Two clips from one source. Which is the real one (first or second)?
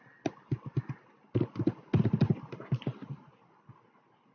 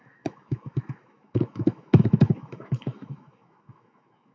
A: first